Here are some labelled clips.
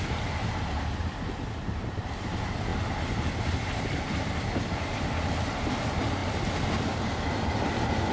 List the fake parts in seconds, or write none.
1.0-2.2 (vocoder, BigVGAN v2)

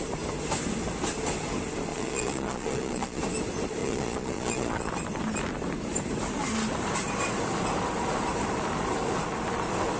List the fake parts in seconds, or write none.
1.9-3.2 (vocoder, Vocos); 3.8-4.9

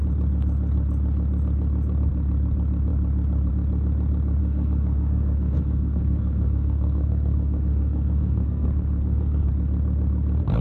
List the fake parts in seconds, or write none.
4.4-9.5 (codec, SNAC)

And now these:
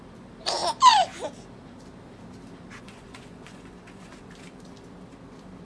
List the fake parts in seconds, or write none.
2.8-4.3 (vocoder, Vocos)

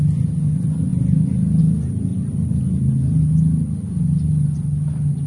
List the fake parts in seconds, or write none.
2.1-2.6 (vocoder, BigVGAN v2)